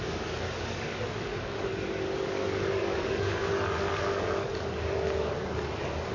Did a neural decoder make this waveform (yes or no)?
yes